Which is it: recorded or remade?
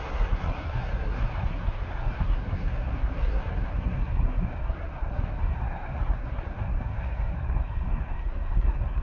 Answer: remade